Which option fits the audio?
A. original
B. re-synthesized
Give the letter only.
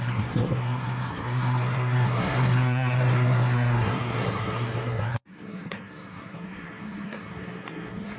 B